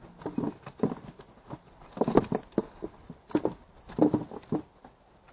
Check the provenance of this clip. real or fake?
real